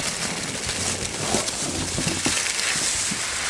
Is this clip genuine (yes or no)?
yes